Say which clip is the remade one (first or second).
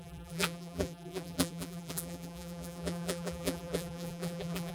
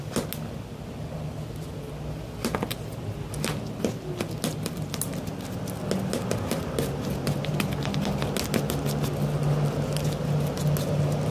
first